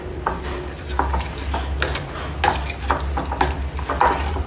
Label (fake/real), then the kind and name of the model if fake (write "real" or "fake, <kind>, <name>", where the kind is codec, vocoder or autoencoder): real